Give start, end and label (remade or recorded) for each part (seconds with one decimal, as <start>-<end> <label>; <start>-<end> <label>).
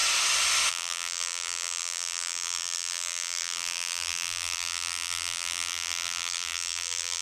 0.0-0.7 recorded; 0.7-7.2 remade